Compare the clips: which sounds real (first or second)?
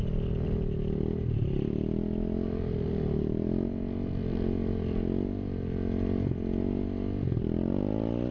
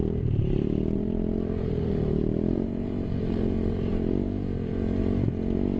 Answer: first